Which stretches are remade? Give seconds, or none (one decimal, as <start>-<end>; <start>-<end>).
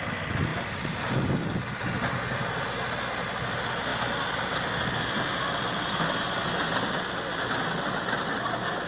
none